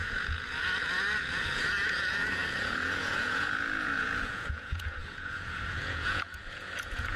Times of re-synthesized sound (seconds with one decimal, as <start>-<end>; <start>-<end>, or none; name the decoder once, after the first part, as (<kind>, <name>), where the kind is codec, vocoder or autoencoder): 0.0-7.2 (vocoder, Vocos)